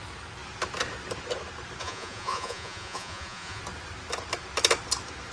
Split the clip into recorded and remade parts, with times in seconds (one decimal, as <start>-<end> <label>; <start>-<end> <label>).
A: 0.0-1.8 recorded; 1.8-3.6 remade; 3.6-5.3 recorded